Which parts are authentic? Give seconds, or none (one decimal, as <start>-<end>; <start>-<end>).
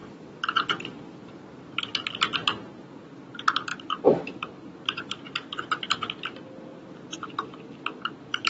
1.8-2.4; 3.2-3.7; 5.2-6.7; 7.6-8.5